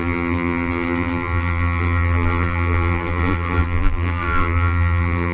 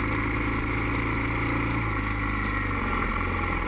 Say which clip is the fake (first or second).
first